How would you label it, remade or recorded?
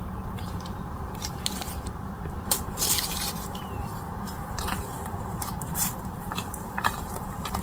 remade